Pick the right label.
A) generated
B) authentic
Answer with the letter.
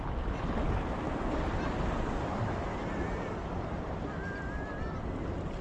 B